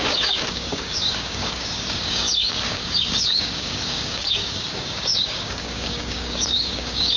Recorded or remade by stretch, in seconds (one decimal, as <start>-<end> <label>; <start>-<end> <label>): 0.0-7.2 remade